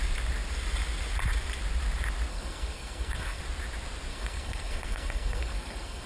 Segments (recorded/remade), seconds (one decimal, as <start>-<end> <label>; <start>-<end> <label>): 0.0-2.3 recorded; 2.3-3.4 remade; 3.4-4.1 recorded; 4.1-6.1 remade